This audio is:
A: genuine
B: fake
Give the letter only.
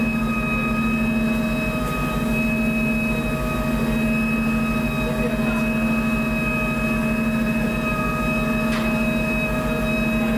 A